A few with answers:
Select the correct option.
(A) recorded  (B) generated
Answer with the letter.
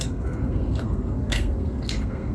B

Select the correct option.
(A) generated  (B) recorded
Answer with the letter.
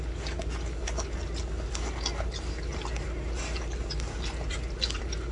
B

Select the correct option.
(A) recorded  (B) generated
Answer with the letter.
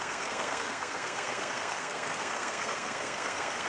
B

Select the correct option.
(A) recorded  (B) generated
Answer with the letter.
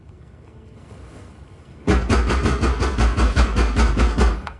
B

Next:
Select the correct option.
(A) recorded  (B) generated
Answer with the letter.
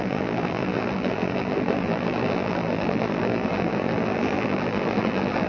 B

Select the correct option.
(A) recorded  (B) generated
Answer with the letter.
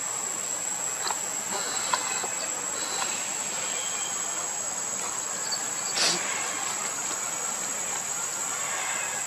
A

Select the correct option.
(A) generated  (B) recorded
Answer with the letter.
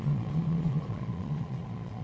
A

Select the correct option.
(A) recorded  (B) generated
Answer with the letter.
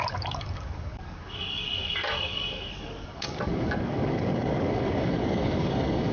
B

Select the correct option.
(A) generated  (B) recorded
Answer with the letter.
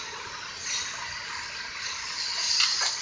B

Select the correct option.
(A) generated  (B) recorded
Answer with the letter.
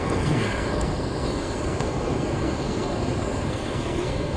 A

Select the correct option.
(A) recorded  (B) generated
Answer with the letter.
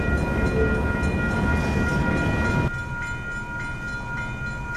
A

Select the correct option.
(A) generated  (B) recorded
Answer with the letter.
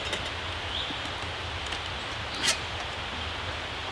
B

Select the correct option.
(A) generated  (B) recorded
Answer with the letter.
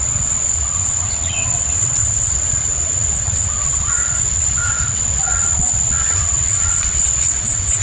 A